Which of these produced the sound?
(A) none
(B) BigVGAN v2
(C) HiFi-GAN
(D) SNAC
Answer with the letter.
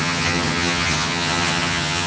C